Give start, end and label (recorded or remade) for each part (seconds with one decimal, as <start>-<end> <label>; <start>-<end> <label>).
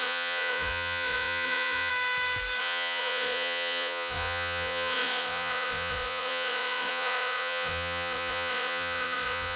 0.0-1.9 remade; 1.9-2.6 recorded; 2.6-9.6 remade